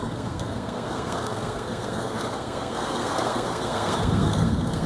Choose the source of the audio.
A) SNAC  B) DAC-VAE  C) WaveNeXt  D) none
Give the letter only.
A